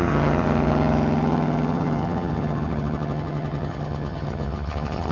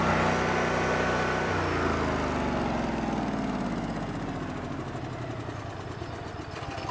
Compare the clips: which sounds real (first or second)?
second